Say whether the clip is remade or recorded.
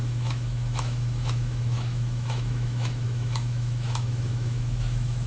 remade